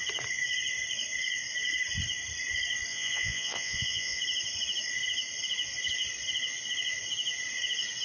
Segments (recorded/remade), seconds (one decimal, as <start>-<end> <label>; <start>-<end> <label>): 0.0-2.9 recorded; 2.9-4.2 remade; 4.2-8.0 recorded